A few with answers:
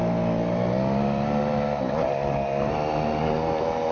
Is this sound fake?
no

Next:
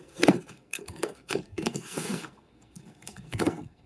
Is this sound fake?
yes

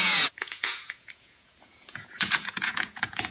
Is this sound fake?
yes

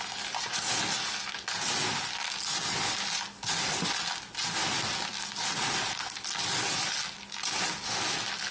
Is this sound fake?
no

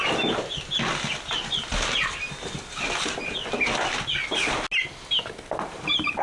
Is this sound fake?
no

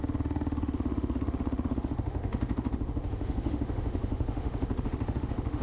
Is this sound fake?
yes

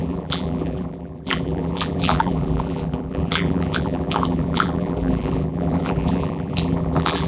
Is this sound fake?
yes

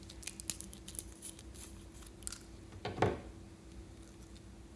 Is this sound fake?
no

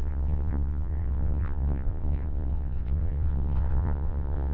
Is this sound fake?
yes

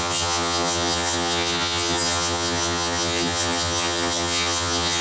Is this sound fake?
yes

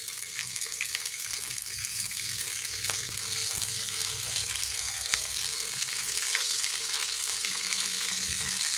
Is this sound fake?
yes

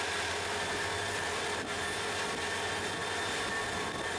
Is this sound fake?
no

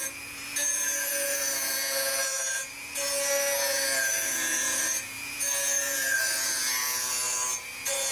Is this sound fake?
yes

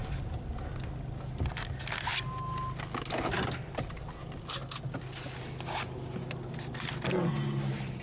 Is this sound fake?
no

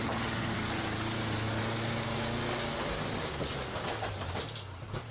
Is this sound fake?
no